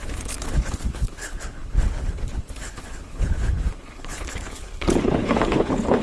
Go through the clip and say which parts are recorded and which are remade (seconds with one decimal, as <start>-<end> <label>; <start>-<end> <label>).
0.0-6.0 remade

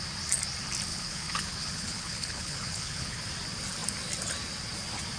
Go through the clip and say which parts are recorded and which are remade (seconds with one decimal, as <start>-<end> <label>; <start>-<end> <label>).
0.0-0.9 recorded; 0.9-3.2 remade; 3.2-5.2 recorded